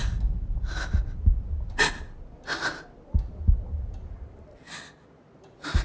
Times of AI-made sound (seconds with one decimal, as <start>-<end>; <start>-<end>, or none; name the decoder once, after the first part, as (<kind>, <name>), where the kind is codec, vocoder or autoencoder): none